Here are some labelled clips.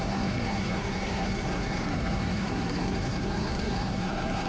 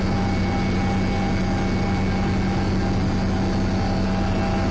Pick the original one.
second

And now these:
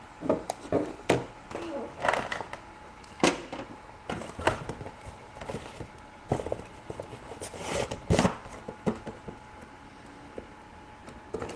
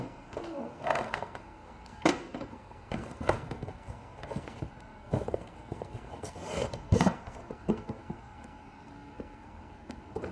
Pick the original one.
first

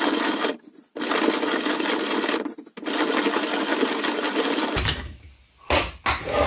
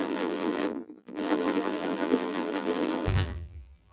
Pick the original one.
first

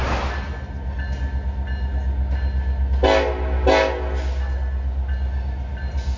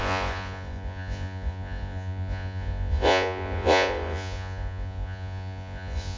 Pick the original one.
first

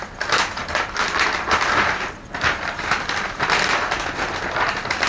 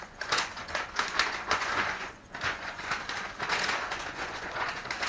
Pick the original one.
first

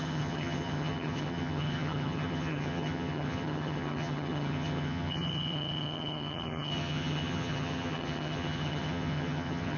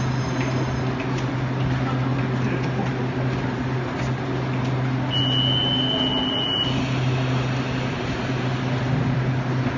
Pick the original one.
second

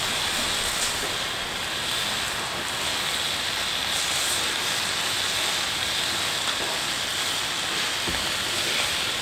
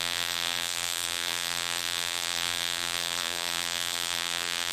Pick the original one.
first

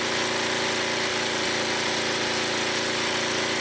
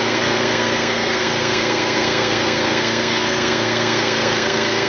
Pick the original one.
first